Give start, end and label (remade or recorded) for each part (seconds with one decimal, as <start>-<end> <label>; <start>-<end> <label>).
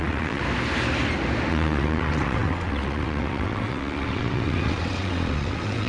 0.0-0.4 remade; 0.4-1.5 recorded; 1.5-5.9 remade